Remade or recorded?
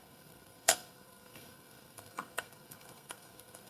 remade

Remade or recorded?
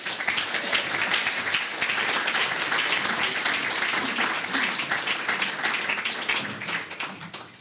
recorded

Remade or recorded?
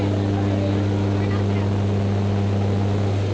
recorded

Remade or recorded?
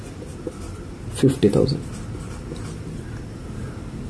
recorded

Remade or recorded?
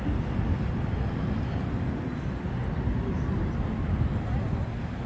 recorded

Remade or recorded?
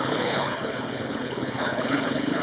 remade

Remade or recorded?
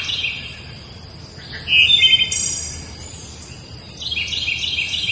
recorded